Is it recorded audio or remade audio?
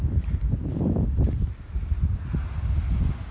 recorded